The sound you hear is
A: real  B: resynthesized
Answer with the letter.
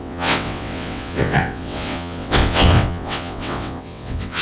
B